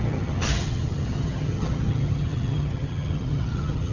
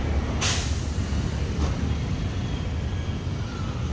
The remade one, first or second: first